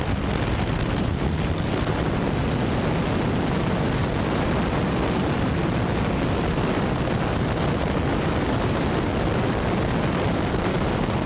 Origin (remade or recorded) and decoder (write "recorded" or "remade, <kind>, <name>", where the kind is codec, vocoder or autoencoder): recorded